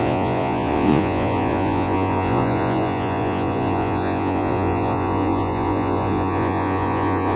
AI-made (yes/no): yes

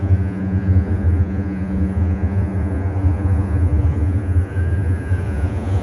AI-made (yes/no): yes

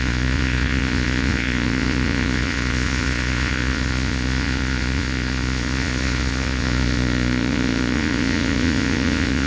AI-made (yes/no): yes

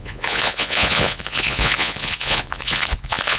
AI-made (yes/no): yes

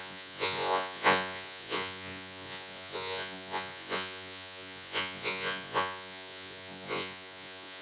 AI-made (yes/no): yes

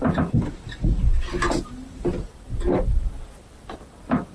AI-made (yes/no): no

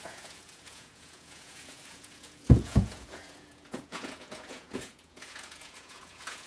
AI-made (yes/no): yes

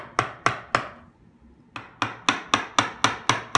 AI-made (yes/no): no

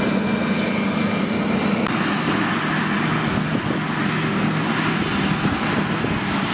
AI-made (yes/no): no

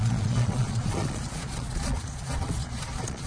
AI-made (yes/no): yes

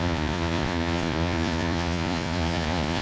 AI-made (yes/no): yes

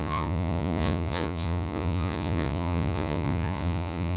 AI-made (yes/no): yes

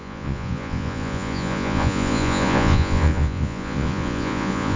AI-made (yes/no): yes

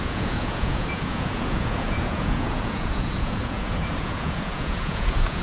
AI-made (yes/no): yes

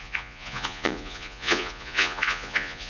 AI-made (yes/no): yes